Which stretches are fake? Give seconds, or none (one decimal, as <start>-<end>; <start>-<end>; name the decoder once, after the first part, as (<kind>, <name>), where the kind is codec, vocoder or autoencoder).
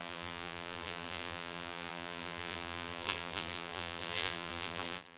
0.0-5.2 (vocoder, BigVGAN v2)